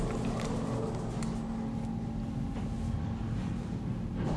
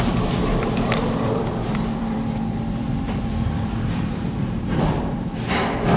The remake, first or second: second